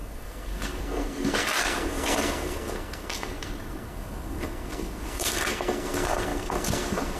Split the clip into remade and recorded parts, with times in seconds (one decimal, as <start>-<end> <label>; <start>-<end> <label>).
0.0-7.2 remade